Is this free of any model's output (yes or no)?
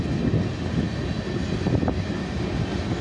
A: yes